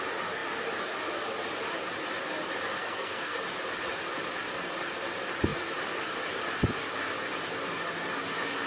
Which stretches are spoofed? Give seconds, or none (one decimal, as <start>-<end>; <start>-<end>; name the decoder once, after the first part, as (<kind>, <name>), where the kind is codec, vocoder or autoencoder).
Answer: 2.8-3.4 (codec, SNAC)